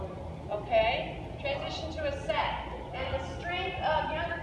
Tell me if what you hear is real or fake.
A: real